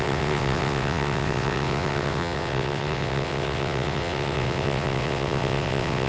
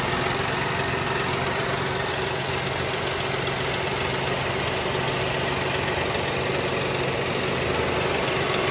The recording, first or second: second